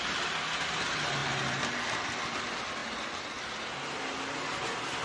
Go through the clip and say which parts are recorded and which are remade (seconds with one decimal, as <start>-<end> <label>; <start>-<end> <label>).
0.0-5.0 recorded